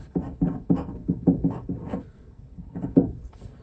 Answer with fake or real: fake